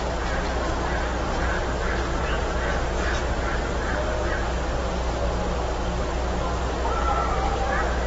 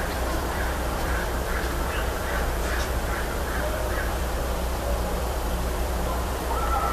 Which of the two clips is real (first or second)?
first